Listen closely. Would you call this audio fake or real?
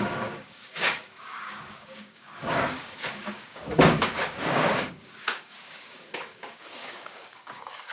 fake